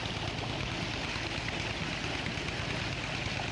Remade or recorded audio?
recorded